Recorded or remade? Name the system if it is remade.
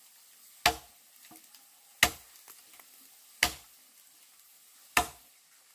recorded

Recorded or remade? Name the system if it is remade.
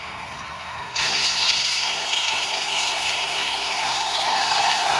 remade, codec, SNAC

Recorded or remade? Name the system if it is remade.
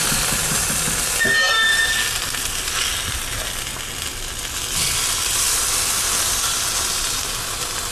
recorded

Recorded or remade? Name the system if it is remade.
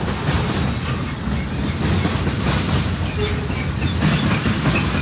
recorded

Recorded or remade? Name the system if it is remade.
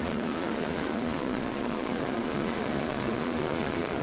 remade, vocoder, Vocos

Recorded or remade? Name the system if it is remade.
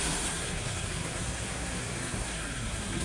remade, codec, SNAC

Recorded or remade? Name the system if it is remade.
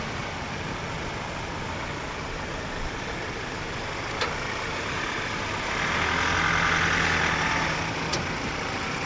recorded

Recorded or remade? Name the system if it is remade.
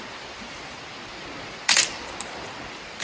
recorded